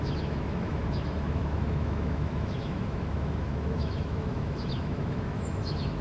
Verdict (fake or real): fake